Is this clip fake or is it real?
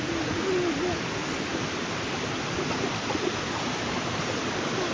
real